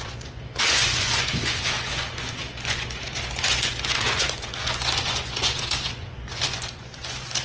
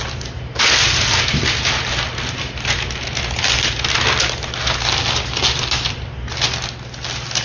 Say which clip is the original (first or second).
second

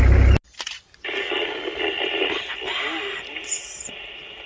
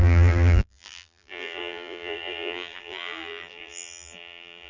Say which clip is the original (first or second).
first